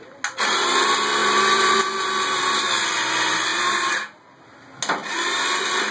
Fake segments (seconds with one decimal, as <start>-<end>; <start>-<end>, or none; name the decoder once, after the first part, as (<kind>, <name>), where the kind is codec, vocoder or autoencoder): 1.2-1.8 (vocoder, BigVGAN v2)

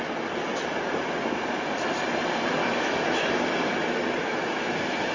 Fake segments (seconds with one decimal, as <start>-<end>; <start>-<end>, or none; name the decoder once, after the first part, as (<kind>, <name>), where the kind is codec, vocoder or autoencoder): 2.6-3.3 (autoencoder, DAC-VAE); 4.2-5.1

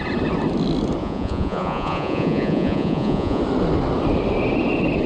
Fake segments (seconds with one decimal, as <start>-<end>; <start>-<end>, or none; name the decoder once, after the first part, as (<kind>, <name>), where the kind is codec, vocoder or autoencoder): 1.0-3.4 (vocoder, Vocos)

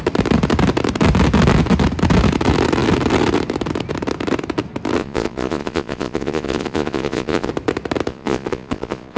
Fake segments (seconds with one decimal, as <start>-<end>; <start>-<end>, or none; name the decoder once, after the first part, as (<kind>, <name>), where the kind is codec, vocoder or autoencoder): 5.0-7.5 (vocoder, Vocos); 8.1-9.2